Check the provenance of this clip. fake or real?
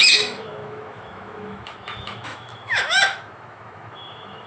fake